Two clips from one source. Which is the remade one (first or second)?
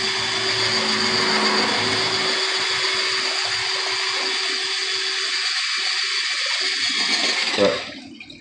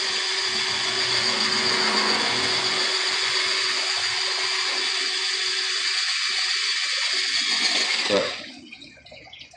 second